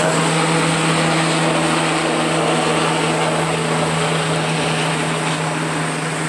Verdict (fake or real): real